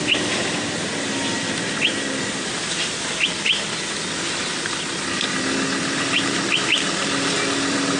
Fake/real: real